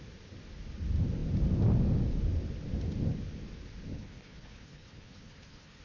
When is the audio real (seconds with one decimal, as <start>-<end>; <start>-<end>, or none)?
0.0-3.9